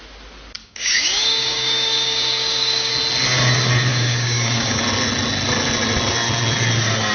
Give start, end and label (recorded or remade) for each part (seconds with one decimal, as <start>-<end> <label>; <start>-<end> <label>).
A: 0.0-0.6 recorded; 0.6-2.9 remade; 2.9-3.9 recorded; 3.9-4.8 remade; 4.8-7.1 recorded